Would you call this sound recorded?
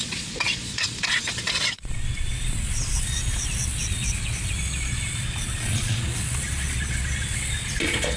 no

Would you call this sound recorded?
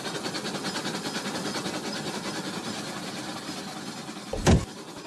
yes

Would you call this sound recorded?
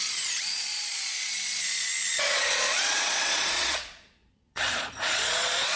no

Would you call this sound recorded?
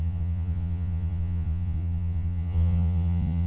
no